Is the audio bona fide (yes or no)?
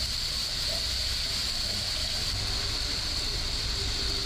yes